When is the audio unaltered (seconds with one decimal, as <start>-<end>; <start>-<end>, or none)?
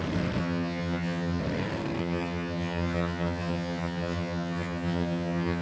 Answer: 0.0-0.4; 1.4-2.0